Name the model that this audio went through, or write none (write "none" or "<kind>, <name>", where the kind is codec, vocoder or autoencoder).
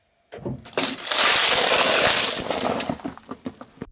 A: none